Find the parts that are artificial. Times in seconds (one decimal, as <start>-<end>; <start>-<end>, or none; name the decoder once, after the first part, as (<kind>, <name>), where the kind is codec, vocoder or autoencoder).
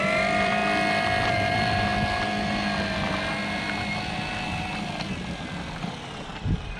0.0-0.6 (vocoder, BigVGAN v2); 1.3-1.9; 5.1-6.8